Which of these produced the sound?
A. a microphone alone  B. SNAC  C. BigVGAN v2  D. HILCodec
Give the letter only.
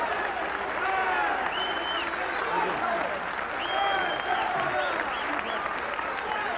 A